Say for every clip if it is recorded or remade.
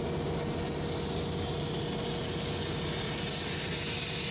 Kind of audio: recorded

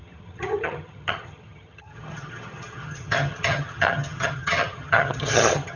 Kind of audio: remade